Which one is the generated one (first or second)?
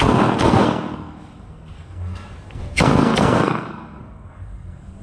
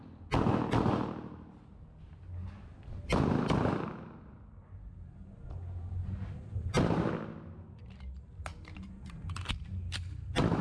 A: first